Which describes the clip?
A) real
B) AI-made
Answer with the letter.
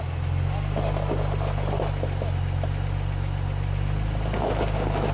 A